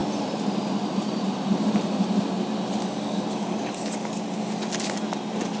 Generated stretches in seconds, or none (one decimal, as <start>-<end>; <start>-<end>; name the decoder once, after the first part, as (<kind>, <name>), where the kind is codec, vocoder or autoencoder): 2.8-4.2 (codec, DAC)